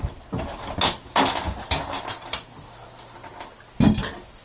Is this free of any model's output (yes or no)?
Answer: yes